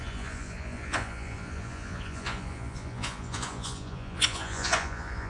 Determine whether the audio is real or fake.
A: fake